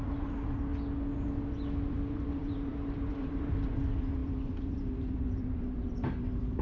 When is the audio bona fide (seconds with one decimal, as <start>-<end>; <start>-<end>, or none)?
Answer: 0.7-2.3